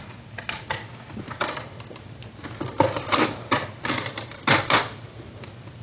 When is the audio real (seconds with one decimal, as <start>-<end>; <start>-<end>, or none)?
0.0-5.8